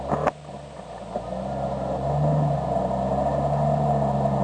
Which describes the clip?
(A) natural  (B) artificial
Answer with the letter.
A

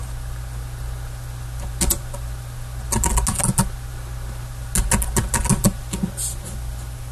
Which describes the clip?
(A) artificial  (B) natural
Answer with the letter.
B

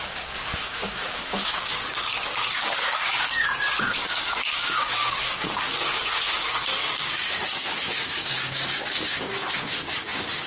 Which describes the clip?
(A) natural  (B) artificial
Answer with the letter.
B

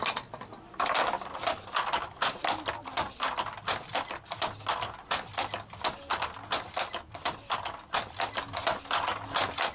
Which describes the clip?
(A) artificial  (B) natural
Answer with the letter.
B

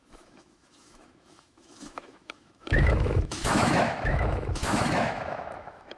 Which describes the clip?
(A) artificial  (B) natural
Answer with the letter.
A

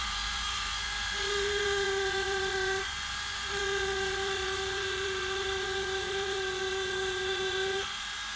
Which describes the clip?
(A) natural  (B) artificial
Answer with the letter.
B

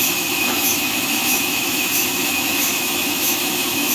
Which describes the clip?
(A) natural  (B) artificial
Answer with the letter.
B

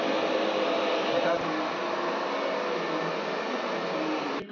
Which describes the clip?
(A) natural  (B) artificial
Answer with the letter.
A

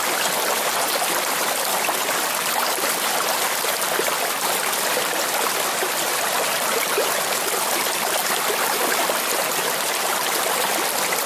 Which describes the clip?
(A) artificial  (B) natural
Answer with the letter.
B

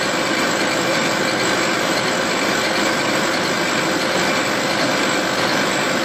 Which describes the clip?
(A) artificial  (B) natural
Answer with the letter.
B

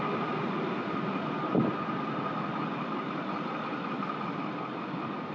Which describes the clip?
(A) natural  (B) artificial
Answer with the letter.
A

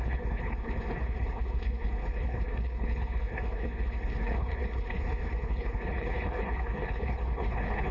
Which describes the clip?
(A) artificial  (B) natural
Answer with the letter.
A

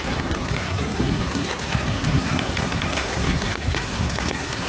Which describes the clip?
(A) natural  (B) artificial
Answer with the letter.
B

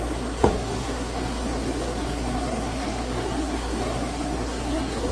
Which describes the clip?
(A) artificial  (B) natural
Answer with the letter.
A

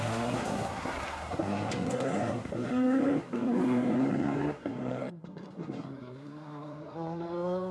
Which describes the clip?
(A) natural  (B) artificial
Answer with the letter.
B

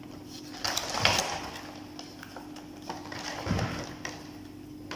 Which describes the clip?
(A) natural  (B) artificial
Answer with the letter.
A